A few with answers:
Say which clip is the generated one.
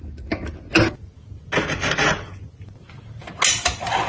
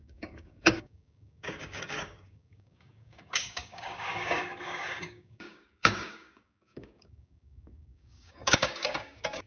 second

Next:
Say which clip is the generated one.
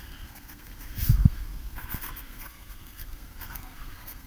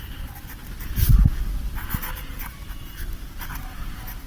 first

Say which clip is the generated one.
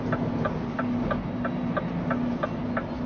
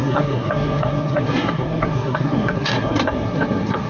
second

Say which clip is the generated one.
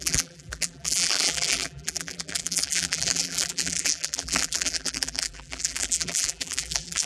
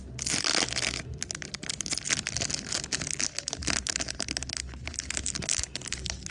first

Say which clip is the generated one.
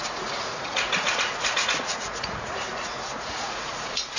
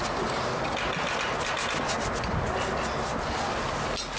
first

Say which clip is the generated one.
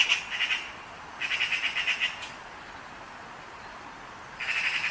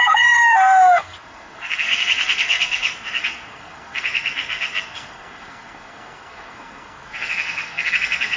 second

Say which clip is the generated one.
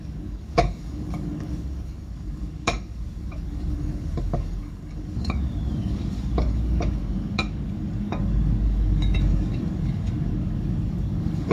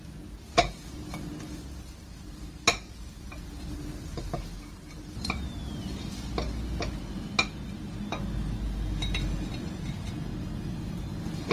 first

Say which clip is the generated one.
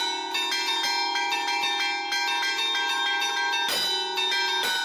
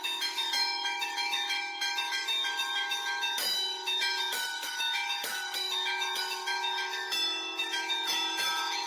second